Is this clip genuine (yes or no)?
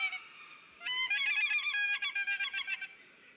yes